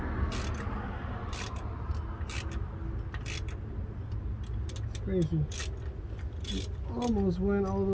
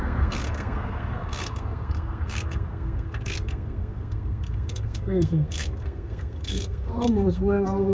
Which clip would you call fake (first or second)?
second